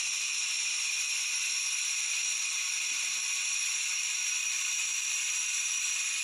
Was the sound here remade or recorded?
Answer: remade